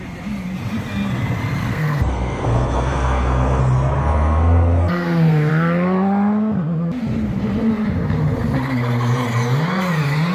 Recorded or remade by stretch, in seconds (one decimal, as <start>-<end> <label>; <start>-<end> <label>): 0.0-1.7 recorded; 1.7-3.6 remade; 3.6-4.0 recorded; 4.0-5.5 remade; 5.5-10.3 recorded